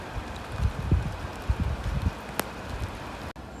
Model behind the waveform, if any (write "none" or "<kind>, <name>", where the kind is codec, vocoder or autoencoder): none